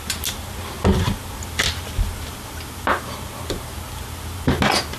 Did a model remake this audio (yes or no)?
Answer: no